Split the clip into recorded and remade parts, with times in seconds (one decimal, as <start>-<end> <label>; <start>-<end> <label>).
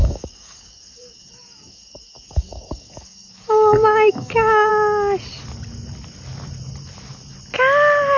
0.0-4.7 remade; 4.7-8.2 recorded